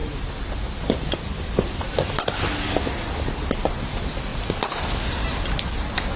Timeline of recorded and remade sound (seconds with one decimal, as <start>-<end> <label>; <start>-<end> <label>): 0.0-6.2 recorded